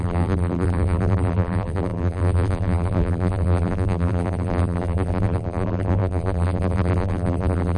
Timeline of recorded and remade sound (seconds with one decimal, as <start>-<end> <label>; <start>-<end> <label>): 0.0-7.8 remade